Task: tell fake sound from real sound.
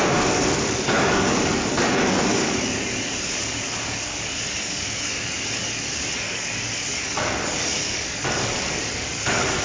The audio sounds fake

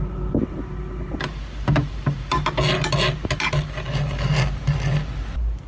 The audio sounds real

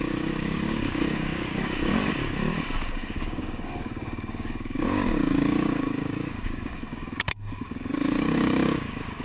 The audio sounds fake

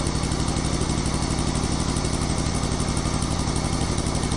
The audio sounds real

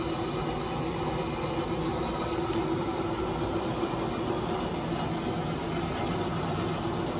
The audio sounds real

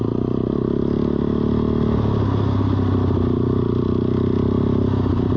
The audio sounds real